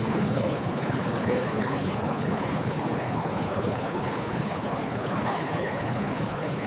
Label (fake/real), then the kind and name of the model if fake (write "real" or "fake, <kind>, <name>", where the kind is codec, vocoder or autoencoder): fake, codec, HILCodec